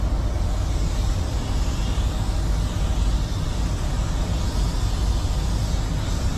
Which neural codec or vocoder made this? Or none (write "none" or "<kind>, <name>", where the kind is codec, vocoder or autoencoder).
none